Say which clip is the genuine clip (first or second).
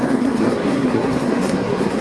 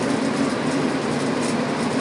second